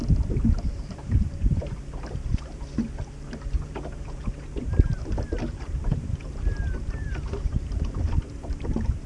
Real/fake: fake